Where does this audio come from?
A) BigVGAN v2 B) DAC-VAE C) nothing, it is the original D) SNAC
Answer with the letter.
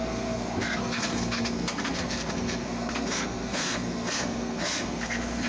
D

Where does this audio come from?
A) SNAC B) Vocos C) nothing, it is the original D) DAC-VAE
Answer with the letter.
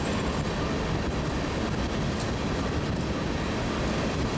C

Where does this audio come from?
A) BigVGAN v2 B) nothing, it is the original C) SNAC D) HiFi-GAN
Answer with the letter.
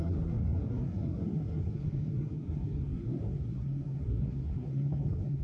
C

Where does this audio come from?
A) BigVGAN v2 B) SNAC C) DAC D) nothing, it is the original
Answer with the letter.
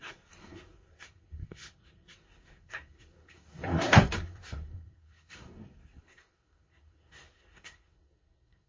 B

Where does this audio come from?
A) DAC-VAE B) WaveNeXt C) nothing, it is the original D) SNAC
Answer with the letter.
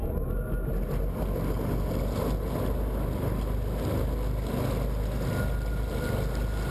C